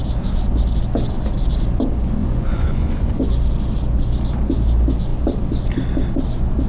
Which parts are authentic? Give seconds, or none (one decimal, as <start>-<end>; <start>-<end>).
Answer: 0.0-2.2; 3.2-6.7